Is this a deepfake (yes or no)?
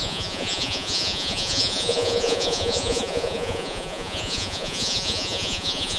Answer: yes